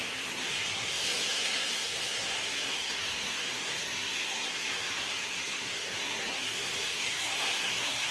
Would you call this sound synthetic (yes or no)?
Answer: yes